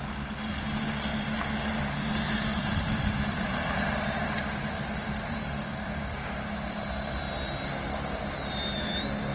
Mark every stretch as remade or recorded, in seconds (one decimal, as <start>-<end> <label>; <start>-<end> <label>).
0.0-2.5 recorded; 2.5-7.2 remade; 7.2-9.3 recorded